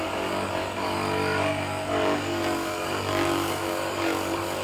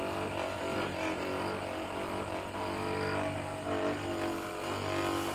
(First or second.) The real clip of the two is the second